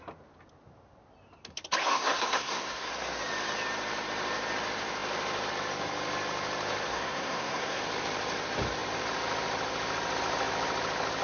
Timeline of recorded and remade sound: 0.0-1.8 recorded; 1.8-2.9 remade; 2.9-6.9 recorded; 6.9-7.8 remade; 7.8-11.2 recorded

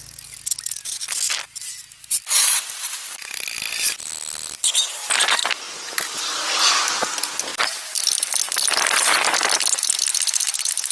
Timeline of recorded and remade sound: 0.0-10.9 recorded